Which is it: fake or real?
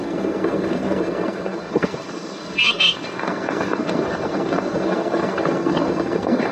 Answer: fake